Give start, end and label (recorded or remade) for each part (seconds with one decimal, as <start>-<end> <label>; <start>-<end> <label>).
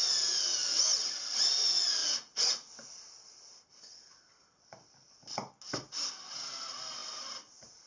0.0-2.0 recorded; 2.0-2.7 remade; 2.7-7.9 recorded